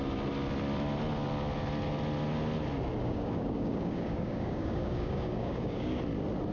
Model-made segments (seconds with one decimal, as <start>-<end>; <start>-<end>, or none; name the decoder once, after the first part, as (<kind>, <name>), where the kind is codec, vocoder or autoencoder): 3.0-6.0 (codec, DAC)